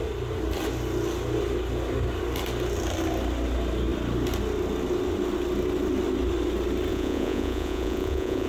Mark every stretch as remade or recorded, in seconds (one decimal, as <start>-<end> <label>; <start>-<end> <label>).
0.0-6.9 recorded; 6.9-8.5 remade